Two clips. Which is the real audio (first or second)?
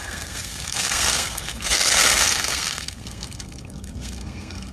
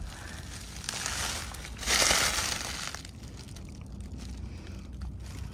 second